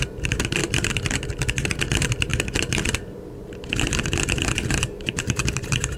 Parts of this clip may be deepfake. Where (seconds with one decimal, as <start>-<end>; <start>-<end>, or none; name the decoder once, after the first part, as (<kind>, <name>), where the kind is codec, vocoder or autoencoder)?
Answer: 0.0-0.6 (vocoder, BigVGAN v2); 1.9-2.3; 4.9-6.0